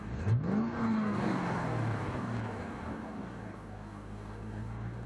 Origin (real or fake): fake